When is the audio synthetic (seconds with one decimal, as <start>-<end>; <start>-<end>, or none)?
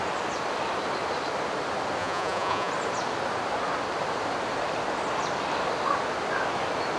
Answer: 2.0-2.7